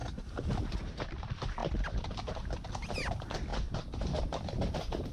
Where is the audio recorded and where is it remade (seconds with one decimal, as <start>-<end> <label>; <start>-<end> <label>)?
0.0-5.1 recorded